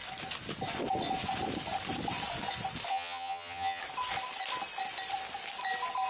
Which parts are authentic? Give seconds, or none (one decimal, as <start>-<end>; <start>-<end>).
0.0-2.9; 3.8-6.1